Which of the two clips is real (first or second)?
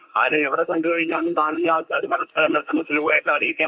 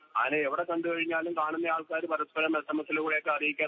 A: second